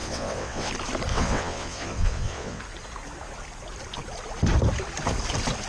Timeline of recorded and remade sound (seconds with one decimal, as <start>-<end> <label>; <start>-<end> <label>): 0.0-0.7 remade; 0.7-1.1 recorded; 1.1-2.6 remade; 2.6-5.7 recorded